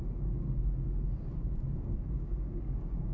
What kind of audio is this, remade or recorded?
remade